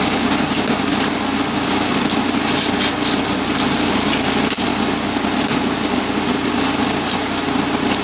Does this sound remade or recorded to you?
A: recorded